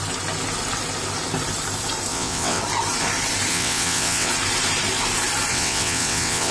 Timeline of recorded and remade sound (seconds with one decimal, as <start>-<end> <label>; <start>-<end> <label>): 0.0-2.1 recorded; 2.1-2.6 remade; 2.6-3.5 recorded; 3.5-4.3 remade; 4.3-5.5 recorded; 5.5-6.5 remade